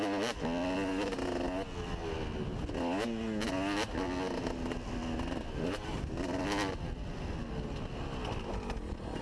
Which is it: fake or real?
real